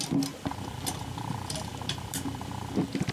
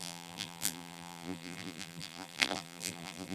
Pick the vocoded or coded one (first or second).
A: second